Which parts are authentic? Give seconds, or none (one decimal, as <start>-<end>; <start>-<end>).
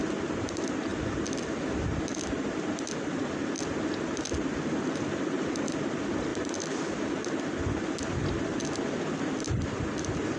0.0-10.4